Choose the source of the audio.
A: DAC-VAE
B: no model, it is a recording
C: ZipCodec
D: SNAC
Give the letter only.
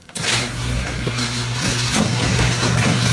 D